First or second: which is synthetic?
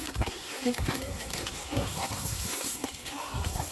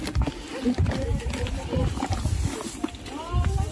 first